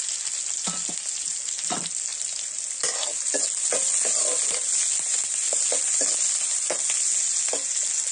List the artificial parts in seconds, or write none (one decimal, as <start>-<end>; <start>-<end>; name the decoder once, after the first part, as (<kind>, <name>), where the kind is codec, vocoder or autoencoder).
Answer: none